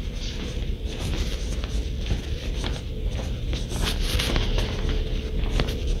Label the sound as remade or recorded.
recorded